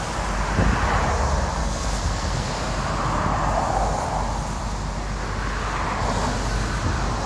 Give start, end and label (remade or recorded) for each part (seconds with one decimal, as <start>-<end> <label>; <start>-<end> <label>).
0.0-1.6 recorded; 1.6-2.5 remade; 2.5-7.3 recorded